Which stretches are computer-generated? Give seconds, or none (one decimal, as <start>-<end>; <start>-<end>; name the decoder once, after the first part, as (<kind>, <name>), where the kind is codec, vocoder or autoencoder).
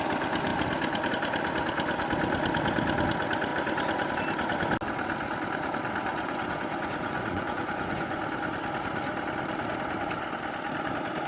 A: 6.1-8.2 (vocoder, Vocos)